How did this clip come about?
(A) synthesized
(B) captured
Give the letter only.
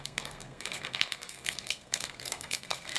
A